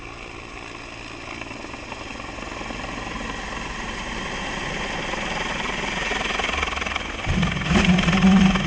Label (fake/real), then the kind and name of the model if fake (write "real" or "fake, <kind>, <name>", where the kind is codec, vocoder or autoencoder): real